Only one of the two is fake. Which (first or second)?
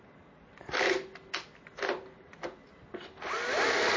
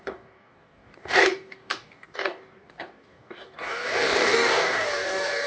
second